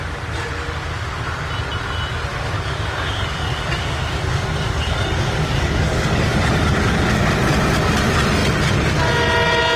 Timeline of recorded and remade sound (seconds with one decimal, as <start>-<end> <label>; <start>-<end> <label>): 0.0-2.3 recorded; 2.3-7.1 remade; 7.1-9.8 recorded